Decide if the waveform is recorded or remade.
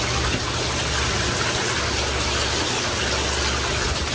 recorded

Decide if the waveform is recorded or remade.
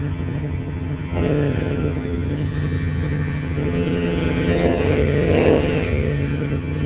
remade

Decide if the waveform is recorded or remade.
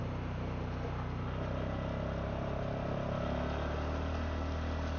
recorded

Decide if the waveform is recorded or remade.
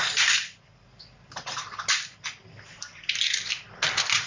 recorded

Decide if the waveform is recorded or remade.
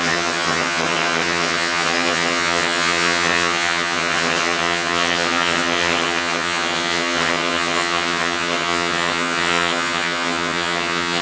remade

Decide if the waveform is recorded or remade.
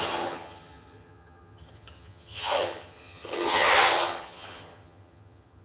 remade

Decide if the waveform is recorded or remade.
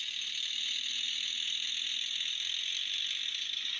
recorded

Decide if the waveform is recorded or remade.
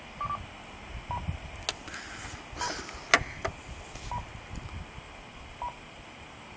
recorded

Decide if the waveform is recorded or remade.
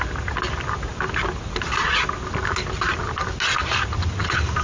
recorded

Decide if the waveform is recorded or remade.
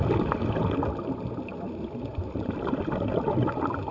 recorded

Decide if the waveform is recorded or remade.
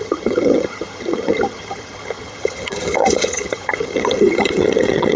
remade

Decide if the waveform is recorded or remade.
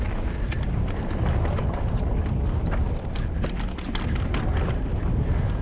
recorded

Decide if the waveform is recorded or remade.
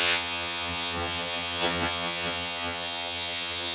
remade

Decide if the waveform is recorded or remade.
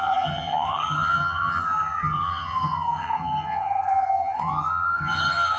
remade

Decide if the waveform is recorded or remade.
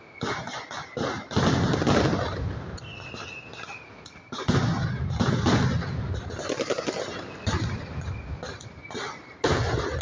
recorded